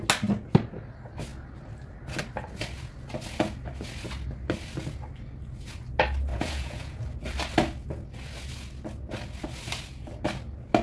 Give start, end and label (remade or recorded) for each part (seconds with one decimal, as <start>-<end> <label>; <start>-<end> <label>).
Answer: 0.0-6.3 recorded; 6.3-7.0 remade; 7.0-10.8 recorded